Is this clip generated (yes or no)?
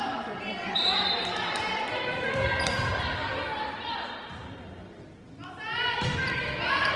yes